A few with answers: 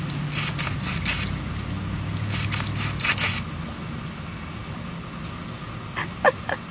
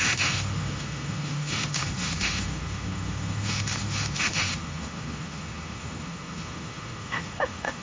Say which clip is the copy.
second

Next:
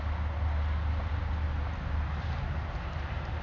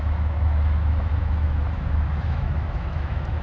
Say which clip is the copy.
second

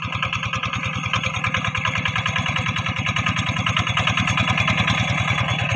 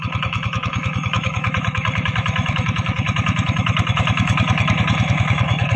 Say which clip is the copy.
second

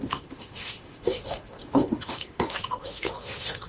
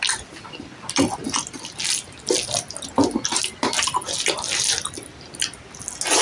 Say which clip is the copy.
first